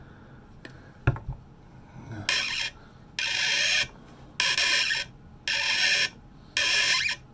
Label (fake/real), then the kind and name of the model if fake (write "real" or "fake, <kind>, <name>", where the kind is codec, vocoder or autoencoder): real